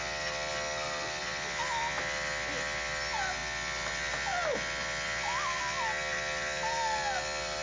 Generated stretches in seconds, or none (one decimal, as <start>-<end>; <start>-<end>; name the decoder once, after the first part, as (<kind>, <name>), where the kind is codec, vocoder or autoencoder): none